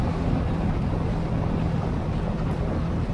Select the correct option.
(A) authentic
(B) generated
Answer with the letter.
A